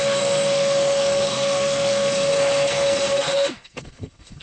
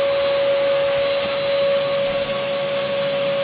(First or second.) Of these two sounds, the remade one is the first